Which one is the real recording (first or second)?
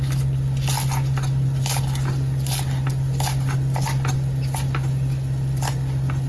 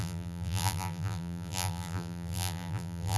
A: first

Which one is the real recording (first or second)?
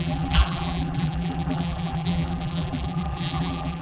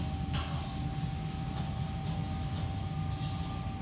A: second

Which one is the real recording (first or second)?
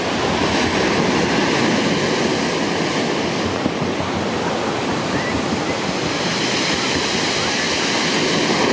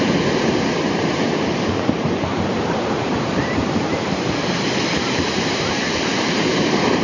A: first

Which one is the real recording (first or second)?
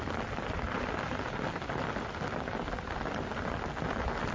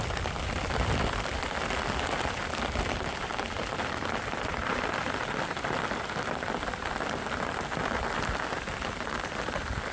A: first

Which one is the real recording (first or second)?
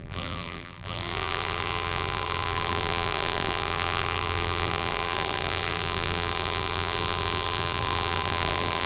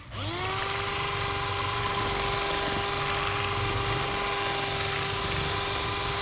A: second